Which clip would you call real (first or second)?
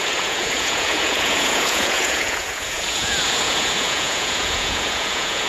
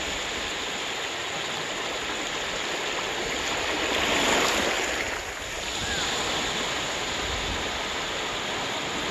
second